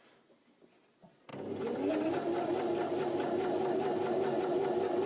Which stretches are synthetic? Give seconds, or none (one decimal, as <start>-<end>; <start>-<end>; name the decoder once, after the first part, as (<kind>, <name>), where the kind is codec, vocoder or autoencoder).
none